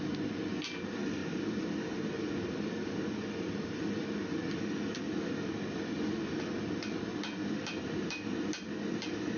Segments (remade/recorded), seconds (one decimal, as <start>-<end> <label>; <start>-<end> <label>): 0.0-9.4 recorded